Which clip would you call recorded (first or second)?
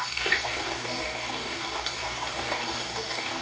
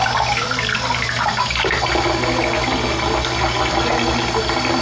second